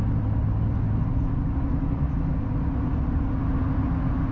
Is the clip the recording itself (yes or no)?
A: yes